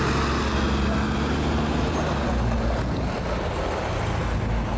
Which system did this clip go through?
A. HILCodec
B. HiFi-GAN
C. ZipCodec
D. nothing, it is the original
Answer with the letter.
D